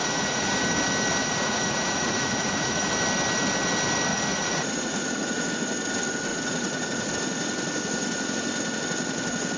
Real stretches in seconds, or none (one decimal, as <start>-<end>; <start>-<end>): 0.5-1.2; 2.9-4.1; 5.5-6.3; 7.1-9.6